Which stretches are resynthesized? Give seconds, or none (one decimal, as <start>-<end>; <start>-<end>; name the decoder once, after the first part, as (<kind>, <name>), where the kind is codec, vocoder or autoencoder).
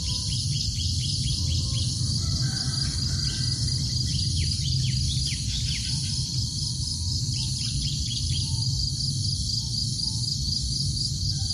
none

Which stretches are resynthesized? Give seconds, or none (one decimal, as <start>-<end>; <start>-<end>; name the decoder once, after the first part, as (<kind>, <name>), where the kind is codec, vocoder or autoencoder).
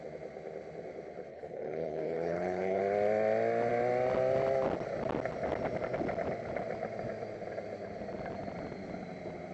1.3-2.8 (codec, HILCodec)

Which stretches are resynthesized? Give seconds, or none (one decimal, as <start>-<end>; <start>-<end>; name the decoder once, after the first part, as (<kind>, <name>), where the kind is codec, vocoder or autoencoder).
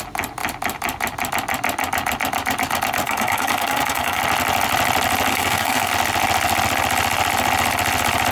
3.0-4.2 (codec, SNAC); 5.3-5.9